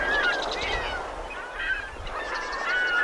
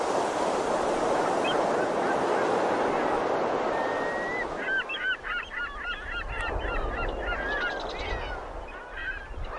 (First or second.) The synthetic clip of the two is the first